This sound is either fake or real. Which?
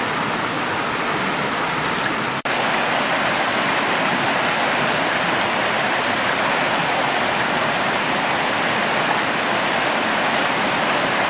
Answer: real